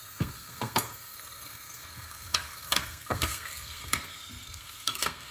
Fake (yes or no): yes